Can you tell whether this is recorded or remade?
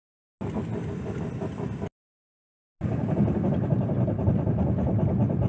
recorded